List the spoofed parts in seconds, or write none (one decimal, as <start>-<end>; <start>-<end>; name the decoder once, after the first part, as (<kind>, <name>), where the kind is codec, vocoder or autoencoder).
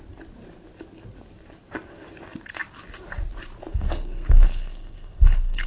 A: 3.7-5.7 (codec, SNAC)